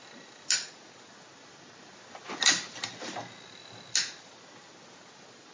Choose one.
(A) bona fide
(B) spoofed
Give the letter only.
A